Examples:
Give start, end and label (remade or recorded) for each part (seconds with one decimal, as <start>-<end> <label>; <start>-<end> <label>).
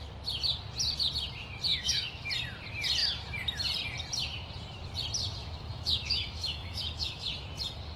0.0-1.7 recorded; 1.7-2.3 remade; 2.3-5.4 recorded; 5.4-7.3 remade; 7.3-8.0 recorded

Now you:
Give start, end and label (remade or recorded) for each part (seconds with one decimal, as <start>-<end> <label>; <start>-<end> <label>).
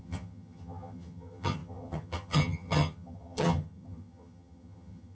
0.0-5.1 remade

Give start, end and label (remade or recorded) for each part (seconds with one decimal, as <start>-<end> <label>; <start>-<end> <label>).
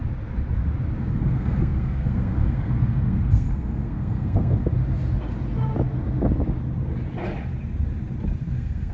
0.0-1.0 recorded; 1.0-4.7 remade; 4.7-8.5 recorded; 8.5-8.9 remade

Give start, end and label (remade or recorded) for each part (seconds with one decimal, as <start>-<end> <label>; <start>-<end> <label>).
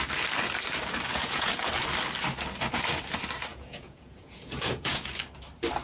0.0-1.1 recorded; 1.1-1.7 remade; 1.7-3.5 recorded; 3.5-5.2 remade; 5.2-5.8 recorded